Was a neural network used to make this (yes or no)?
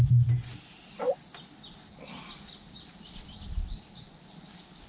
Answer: no